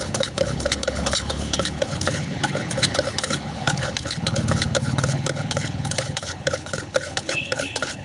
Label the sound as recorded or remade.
remade